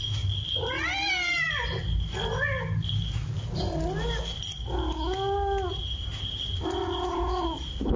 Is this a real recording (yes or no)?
yes